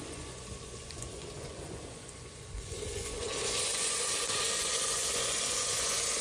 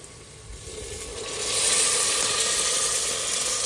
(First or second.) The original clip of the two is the second